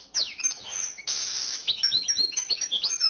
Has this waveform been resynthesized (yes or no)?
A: yes